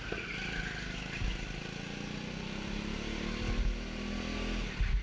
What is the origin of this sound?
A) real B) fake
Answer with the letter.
A